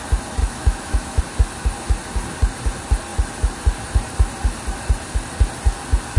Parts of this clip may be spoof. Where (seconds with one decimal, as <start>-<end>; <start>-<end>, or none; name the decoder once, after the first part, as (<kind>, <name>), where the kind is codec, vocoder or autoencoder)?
0.4-1.2 (autoencoder, DAC-VAE)